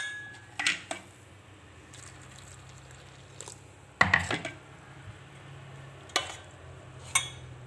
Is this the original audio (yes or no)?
yes